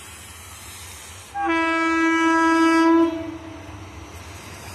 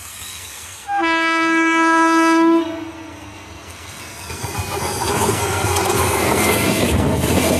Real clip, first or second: first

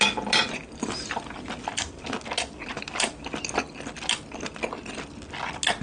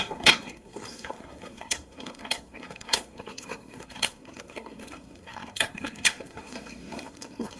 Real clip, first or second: first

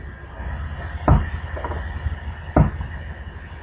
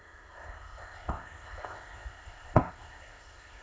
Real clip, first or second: first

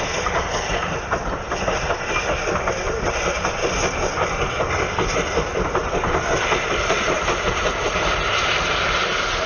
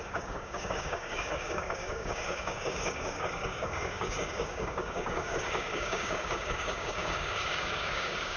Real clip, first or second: first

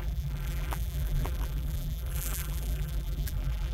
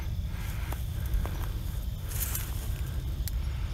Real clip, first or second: second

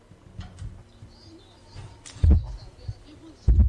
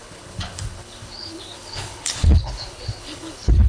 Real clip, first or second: first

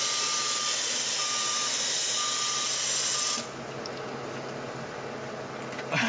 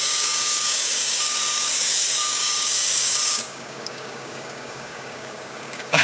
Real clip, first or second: first